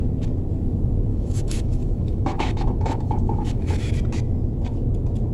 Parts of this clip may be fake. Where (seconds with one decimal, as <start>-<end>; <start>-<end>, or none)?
1.1-3.9